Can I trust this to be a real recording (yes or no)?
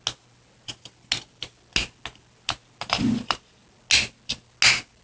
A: yes